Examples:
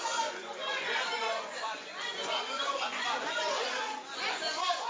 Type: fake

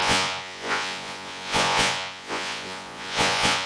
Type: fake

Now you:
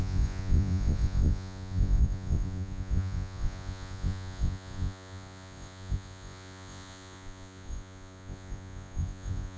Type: fake